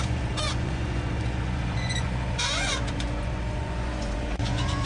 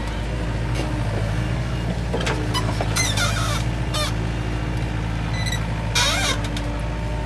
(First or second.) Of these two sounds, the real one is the second